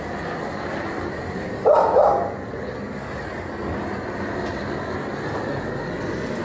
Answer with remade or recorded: recorded